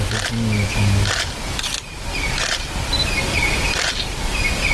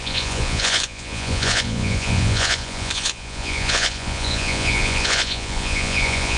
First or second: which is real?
first